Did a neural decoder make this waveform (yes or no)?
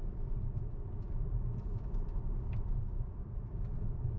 yes